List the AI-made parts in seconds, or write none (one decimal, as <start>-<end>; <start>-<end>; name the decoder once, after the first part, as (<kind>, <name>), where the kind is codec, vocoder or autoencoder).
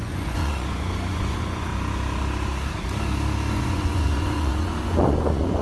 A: 0.0-1.7 (vocoder, Vocos); 3.5-5.6